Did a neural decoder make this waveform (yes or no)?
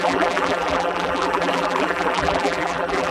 yes